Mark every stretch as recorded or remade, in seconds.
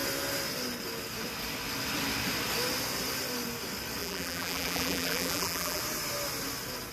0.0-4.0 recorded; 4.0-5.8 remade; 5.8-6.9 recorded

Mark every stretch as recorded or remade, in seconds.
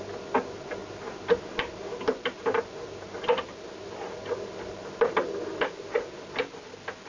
0.0-7.1 recorded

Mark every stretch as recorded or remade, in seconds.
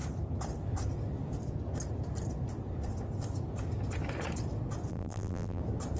0.0-4.9 recorded; 4.9-5.6 remade; 5.6-6.0 recorded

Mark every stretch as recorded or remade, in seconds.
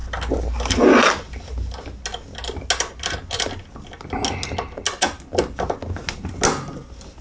0.0-7.2 recorded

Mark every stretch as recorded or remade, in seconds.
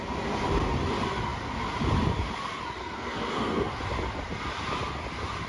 0.0-2.8 recorded; 2.8-3.8 remade; 3.8-5.5 recorded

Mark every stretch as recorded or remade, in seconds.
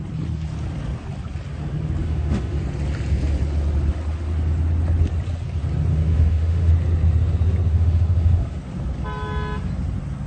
0.0-2.0 recorded; 2.0-2.6 remade; 2.6-5.9 recorded; 5.9-6.7 remade; 6.7-7.7 recorded; 7.7-8.6 remade; 8.6-10.3 recorded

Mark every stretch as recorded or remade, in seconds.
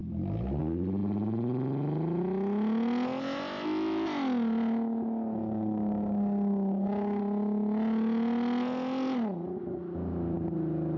0.0-5.4 recorded; 5.4-7.2 remade; 7.2-11.0 recorded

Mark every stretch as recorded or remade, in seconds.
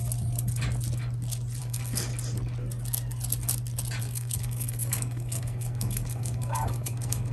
0.0-1.6 recorded; 1.6-2.1 remade; 2.1-4.0 recorded; 4.0-7.3 remade